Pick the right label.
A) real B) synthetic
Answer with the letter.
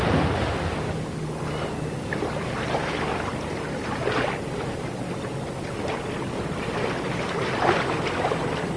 B